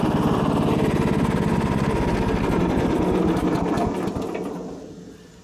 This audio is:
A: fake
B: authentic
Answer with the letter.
B